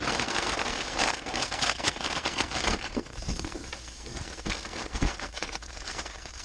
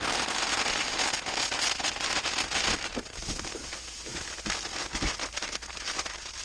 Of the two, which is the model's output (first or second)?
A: first